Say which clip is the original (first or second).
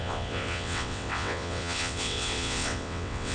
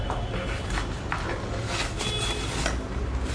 second